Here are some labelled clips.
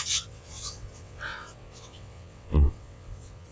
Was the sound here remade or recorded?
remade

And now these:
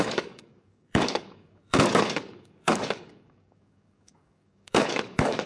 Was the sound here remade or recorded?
remade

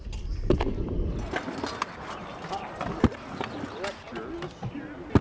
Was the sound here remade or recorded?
recorded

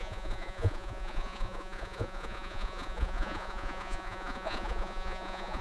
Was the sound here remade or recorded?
remade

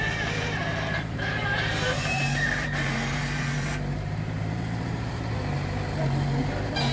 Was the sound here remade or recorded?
remade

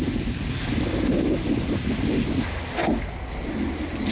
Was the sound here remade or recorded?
recorded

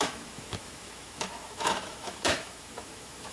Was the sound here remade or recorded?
remade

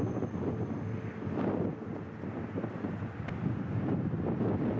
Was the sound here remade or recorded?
recorded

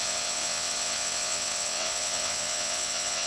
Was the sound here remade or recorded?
remade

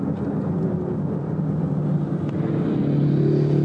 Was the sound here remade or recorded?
recorded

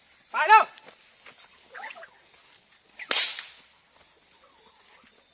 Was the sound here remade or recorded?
recorded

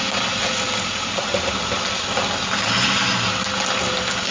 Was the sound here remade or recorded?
recorded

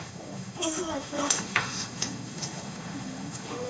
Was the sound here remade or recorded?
remade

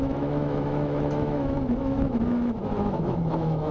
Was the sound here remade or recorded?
remade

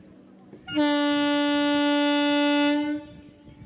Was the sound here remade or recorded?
recorded